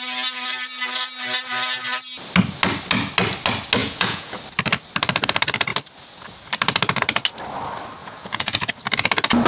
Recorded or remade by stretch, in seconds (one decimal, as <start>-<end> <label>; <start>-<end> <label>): 0.0-3.8 recorded; 3.8-4.4 remade; 4.4-8.0 recorded; 8.0-8.7 remade; 8.7-9.5 recorded